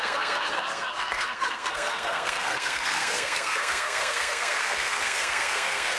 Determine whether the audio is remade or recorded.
remade